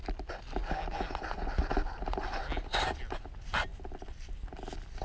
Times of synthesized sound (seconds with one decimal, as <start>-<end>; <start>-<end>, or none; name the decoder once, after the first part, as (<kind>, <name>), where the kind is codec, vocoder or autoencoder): none